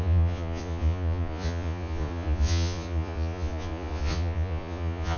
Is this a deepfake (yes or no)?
yes